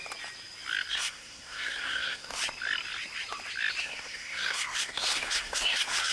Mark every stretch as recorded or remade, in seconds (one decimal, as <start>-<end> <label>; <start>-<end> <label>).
0.0-0.9 recorded; 0.9-2.4 remade; 2.4-3.8 recorded; 3.8-6.1 remade